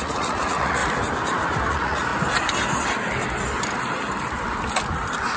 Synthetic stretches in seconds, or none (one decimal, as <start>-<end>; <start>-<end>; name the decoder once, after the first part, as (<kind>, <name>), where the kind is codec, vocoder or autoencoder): 0.0-0.8 (vocoder, Vocos); 1.7-2.1